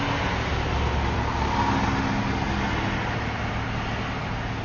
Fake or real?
real